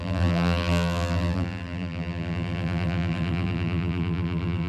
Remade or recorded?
remade